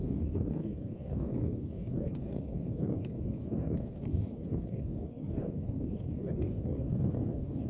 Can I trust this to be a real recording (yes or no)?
no